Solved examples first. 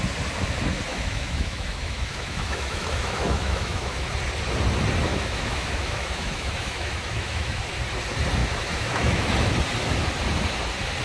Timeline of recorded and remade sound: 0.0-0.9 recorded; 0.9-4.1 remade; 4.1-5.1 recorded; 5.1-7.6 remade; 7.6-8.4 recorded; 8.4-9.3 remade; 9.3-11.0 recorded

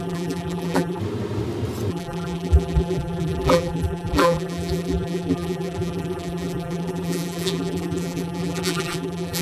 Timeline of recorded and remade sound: 0.0-1.0 remade; 1.0-1.9 recorded; 1.9-9.4 remade

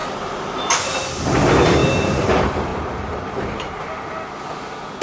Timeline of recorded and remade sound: 0.0-0.7 remade; 0.7-1.8 recorded; 1.8-2.3 remade; 2.3-2.7 recorded; 2.7-3.8 remade; 3.8-5.0 recorded